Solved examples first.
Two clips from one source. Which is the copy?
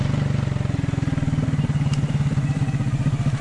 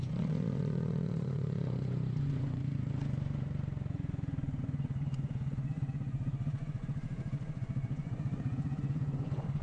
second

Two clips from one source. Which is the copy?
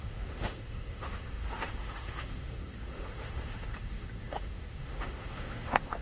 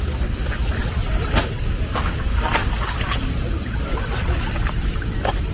first